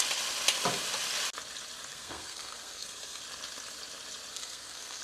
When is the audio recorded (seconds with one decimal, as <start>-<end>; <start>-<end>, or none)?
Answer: 0.0-1.9; 3.2-4.3